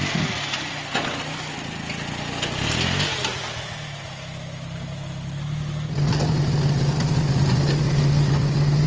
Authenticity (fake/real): real